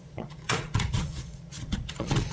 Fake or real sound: fake